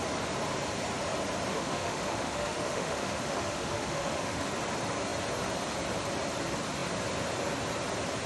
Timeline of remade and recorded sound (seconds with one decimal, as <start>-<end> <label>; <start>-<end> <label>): 0.0-1.5 recorded; 1.5-4.5 remade; 4.5-8.3 recorded